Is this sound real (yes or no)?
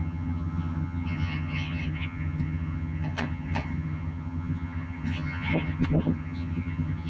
no